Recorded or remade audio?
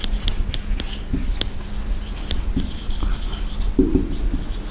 recorded